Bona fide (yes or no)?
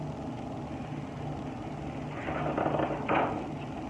yes